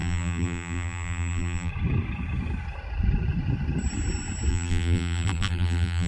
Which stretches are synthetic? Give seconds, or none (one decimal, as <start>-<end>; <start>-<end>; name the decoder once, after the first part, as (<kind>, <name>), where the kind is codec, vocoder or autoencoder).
0.0-1.7 (vocoder, BigVGAN v2); 4.5-6.1